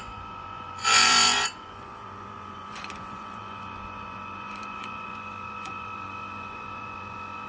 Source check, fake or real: fake